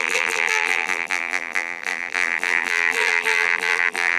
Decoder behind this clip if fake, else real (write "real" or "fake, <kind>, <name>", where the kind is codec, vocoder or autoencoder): fake, vocoder, BigVGAN v2